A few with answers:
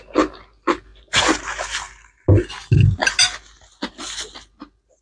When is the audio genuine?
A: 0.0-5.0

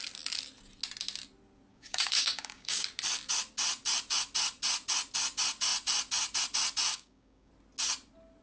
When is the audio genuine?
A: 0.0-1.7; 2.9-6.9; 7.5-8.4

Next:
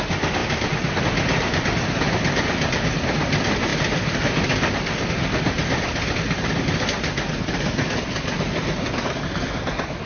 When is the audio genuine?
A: 0.0-10.1

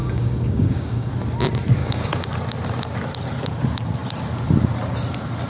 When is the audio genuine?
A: 1.1-1.8; 2.3-5.5

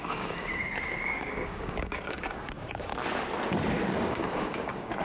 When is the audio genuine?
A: 2.9-4.0

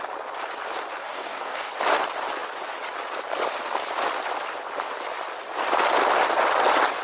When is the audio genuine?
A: 0.0-1.0; 1.7-7.0

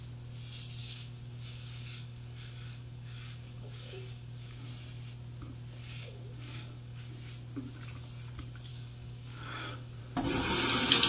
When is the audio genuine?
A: 0.0-0.8; 4.7-5.8; 7.1-8.7; 10.0-11.1

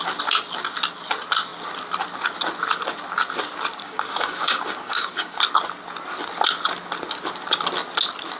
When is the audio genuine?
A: 0.0-3.8; 5.4-8.4